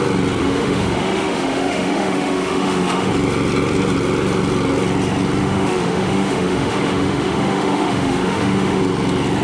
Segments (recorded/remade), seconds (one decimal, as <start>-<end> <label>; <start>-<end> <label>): 0.0-0.4 recorded; 0.4-3.1 remade; 3.1-5.4 recorded; 5.4-8.8 remade; 8.8-9.4 recorded